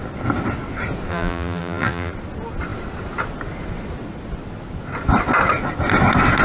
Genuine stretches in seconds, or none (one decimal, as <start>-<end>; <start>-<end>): 0.0-1.1; 2.1-6.4